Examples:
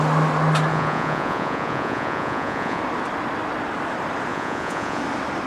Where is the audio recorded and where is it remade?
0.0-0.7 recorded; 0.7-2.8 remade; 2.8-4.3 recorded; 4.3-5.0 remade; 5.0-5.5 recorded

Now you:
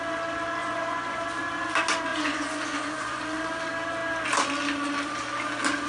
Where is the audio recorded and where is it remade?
0.0-0.6 recorded; 0.6-1.2 remade; 1.2-2.1 recorded; 2.1-3.2 remade; 3.2-5.9 recorded

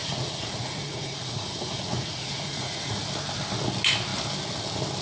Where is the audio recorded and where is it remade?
0.0-3.0 remade; 3.0-5.0 recorded

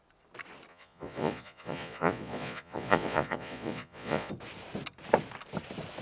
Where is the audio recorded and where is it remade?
0.0-0.7 recorded; 0.7-4.3 remade; 4.3-6.0 recorded